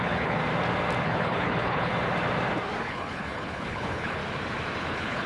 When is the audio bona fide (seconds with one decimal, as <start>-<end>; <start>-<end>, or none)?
0.4-1.0; 1.9-2.8; 4.2-4.8